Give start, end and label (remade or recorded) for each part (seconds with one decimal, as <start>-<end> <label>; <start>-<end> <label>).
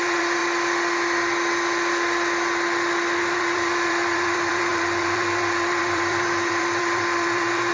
0.0-0.4 remade; 0.4-3.2 recorded; 3.2-7.7 remade